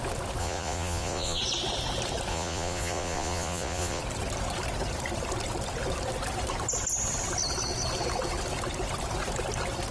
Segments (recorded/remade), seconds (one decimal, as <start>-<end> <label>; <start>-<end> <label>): 0.0-0.4 recorded; 0.4-1.4 remade; 1.4-2.3 recorded; 2.3-4.0 remade; 4.0-9.9 recorded